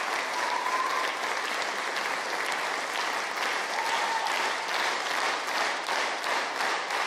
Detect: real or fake real